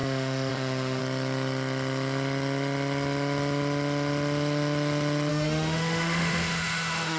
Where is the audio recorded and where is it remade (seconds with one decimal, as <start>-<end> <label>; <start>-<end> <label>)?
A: 0.0-1.0 remade; 1.0-5.3 recorded; 5.3-7.2 remade